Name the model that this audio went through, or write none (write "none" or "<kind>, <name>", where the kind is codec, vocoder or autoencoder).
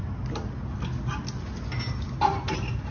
none